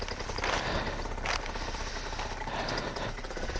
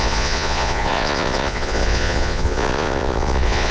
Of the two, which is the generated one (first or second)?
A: second